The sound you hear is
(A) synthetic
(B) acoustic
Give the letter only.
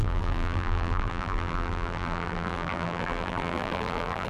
A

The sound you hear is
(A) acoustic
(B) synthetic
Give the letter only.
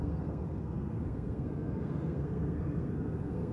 B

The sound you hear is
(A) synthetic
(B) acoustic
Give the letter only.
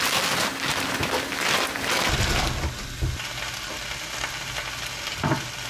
B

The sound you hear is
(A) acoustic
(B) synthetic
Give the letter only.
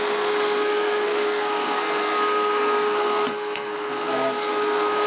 B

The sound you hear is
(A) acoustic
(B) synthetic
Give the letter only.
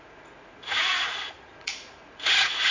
B